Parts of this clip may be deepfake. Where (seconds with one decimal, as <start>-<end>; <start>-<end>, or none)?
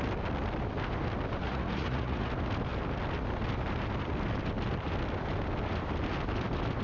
1.4-2.3